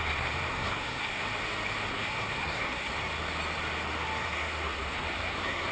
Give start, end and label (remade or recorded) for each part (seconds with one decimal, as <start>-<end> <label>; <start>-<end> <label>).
0.0-0.5 recorded; 0.5-1.2 remade; 1.2-1.9 recorded; 1.9-2.9 remade; 2.9-4.2 recorded; 4.2-5.7 remade